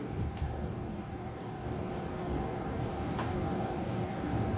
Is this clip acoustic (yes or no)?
no